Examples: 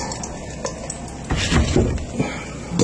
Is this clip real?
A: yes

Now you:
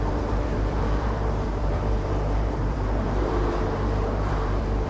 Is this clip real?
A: no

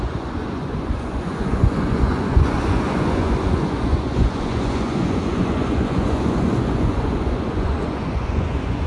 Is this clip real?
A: no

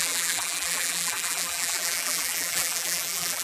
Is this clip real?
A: no